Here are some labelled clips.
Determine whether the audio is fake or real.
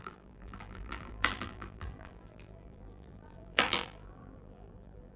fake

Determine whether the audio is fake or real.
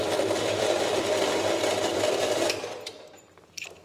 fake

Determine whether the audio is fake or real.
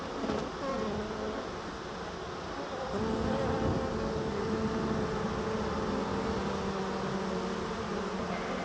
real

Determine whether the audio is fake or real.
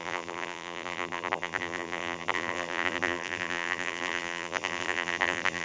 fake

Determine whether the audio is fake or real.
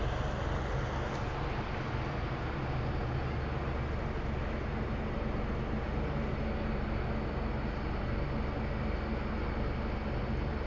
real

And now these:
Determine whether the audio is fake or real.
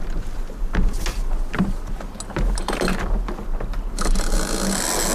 real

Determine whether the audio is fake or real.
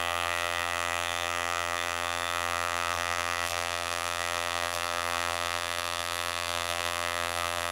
fake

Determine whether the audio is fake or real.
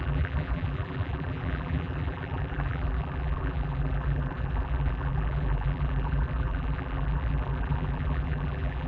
fake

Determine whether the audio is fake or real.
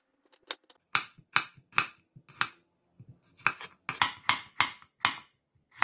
real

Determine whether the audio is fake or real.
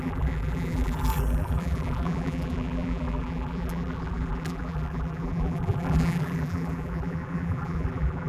fake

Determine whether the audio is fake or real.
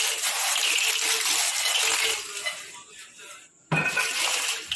real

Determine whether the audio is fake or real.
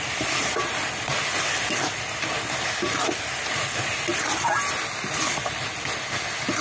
real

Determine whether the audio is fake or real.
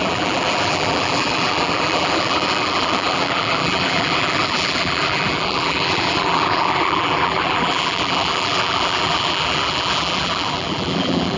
fake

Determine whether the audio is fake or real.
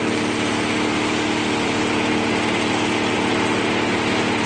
real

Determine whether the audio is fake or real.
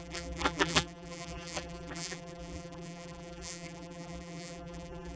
fake